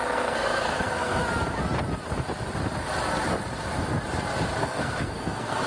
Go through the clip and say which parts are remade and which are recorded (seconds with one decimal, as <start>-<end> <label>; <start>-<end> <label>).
0.0-1.2 remade; 1.2-4.6 recorded; 4.6-5.7 remade